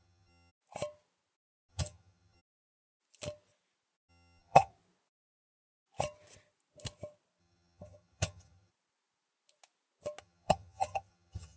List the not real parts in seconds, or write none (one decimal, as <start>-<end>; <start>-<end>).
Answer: 0.0-0.5; 1.7-2.4; 4.1-4.7; 7.4-8.7; 10.2-11.6